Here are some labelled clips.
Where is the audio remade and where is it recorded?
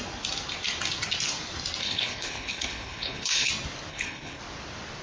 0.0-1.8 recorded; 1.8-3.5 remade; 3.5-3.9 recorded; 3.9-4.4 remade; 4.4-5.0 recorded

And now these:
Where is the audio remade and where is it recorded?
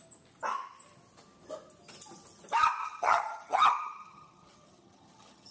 0.0-2.8 recorded; 2.8-5.5 remade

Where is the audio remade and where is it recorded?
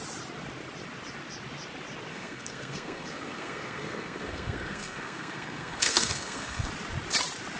0.0-2.1 recorded; 2.1-6.7 remade; 6.7-7.6 recorded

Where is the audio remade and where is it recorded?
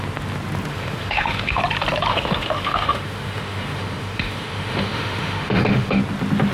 0.0-0.7 recorded; 0.7-1.6 remade; 1.6-2.1 recorded; 2.1-6.0 remade; 6.0-6.5 recorded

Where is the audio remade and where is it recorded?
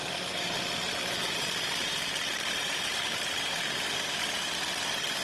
0.0-5.2 recorded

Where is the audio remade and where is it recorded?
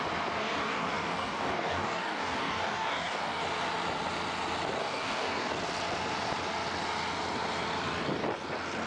0.0-0.4 recorded; 0.4-3.4 remade; 3.4-4.8 recorded; 4.8-5.5 remade; 5.5-8.9 recorded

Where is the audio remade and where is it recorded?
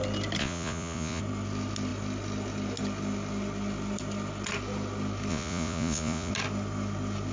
0.0-0.4 recorded; 0.4-1.2 remade; 1.2-5.3 recorded; 5.3-6.3 remade; 6.3-7.3 recorded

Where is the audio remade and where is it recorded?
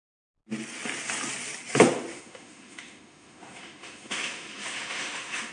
0.0-2.1 recorded; 2.1-5.5 remade